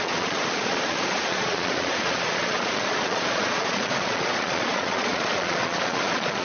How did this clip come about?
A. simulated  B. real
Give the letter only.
A